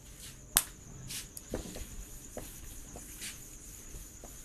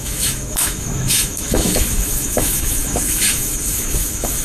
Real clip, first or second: first